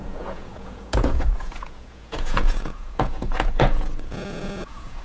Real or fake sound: fake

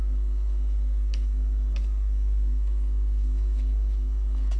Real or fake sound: fake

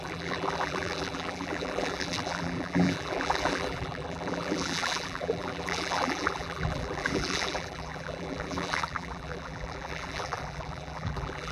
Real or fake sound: fake